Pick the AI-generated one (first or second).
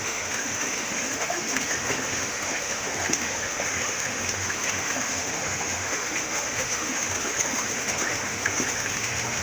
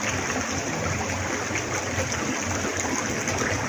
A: first